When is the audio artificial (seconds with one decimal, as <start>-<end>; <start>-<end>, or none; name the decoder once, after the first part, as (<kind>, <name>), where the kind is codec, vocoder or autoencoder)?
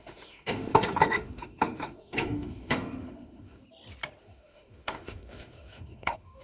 0.0-3.6 (autoencoder, DAC-VAE); 4.2-6.4